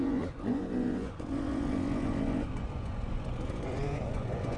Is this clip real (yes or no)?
no